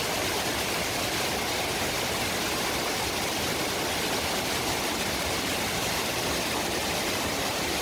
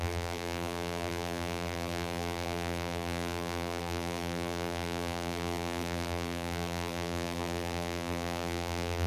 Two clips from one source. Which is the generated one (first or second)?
second